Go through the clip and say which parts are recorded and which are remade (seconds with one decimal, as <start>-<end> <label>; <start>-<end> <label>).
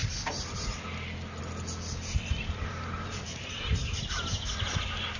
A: 0.0-2.1 recorded; 2.1-5.2 remade